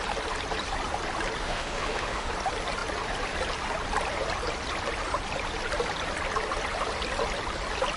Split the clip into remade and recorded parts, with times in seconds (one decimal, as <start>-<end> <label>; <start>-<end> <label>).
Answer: 0.0-1.4 recorded; 1.4-2.3 remade; 2.3-8.0 recorded

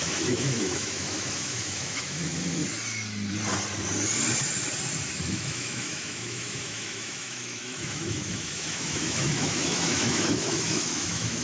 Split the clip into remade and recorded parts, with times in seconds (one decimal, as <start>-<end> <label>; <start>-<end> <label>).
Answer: 0.0-2.6 remade; 2.6-5.3 recorded; 5.3-11.4 remade